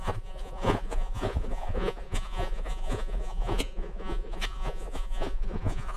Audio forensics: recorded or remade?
remade